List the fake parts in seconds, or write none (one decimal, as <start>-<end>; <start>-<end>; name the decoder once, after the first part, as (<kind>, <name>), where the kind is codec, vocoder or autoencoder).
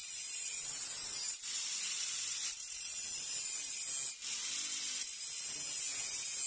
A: 0.0-3.9 (vocoder, BigVGAN v2)